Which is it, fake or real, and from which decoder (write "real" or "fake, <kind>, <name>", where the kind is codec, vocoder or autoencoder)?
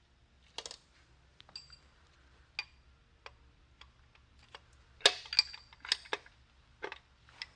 real